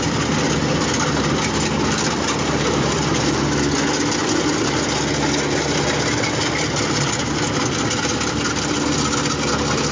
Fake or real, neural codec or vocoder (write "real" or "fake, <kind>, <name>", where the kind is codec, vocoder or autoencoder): real